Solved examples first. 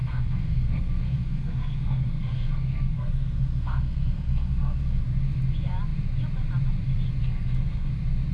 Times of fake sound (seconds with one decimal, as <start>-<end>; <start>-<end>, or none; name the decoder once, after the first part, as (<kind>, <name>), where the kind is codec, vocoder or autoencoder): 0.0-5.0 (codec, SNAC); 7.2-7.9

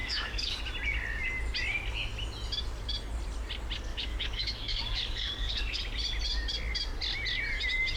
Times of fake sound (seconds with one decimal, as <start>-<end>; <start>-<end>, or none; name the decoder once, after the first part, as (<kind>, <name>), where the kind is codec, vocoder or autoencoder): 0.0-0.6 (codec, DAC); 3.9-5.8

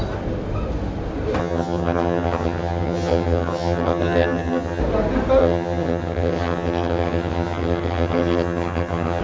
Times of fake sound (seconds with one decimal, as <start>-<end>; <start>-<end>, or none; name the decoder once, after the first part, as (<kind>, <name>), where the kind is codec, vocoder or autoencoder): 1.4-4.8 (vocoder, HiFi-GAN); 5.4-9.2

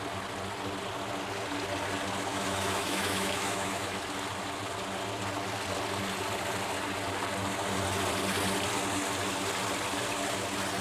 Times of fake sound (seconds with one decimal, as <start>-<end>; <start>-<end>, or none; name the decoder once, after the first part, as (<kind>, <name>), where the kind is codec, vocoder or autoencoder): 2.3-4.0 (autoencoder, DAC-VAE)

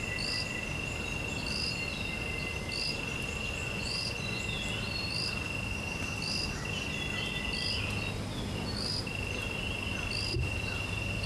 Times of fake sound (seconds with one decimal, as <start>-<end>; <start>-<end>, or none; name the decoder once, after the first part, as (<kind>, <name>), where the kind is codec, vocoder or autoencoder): 3.6-4.4 (vocoder, Vocos)

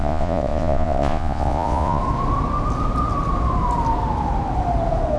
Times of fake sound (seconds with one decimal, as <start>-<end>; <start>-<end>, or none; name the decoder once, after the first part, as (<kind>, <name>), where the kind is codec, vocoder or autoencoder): 0.0-2.0 (vocoder, Vocos)

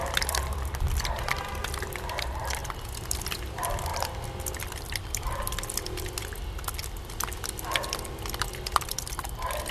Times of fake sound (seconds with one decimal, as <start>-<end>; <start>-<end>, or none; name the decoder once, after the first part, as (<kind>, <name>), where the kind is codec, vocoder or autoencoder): 0.0-2.6 (vocoder, BigVGAN v2); 3.5-3.9; 6.0-6.8; 8.9-9.7

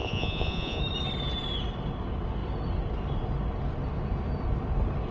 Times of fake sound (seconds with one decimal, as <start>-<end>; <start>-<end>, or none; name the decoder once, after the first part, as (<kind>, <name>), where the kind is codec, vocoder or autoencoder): 0.0-0.8 (vocoder, Vocos)